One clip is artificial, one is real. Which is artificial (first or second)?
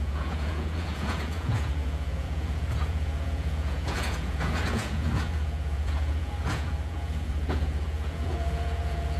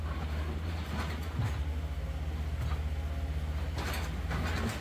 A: first